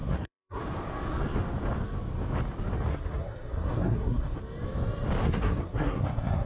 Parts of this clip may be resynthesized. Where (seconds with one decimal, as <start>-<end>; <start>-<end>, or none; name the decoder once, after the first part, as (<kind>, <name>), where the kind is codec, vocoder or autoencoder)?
0.0-0.6 (codec, SNAC); 2.9-4.4; 5.2-6.5